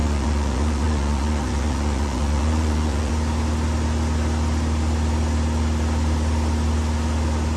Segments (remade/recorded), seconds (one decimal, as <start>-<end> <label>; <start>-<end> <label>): 0.0-3.1 remade; 3.1-7.6 recorded

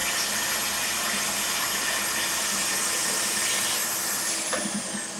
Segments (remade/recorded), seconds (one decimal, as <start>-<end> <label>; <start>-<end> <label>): 0.0-5.2 recorded

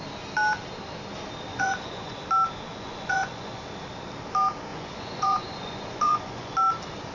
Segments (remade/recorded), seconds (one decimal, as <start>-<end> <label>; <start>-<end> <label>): 0.0-1.5 recorded; 1.5-2.2 remade; 2.2-2.7 recorded; 2.7-3.6 remade; 3.6-4.7 recorded; 4.7-6.5 remade; 6.5-7.1 recorded

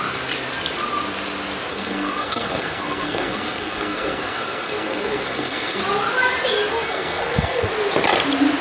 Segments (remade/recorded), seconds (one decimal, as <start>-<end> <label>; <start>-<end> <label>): 0.0-1.7 recorded; 1.7-5.8 remade; 5.8-6.7 recorded; 6.7-7.7 remade; 7.7-8.6 recorded

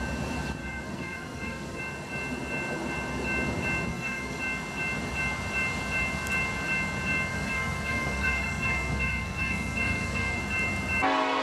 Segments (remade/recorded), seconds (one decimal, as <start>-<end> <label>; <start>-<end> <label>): 0.0-0.6 recorded; 0.6-1.8 remade; 1.8-3.9 recorded; 3.9-4.4 remade; 4.4-7.3 recorded; 7.3-10.4 remade; 10.4-11.4 recorded